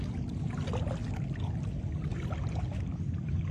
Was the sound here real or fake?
real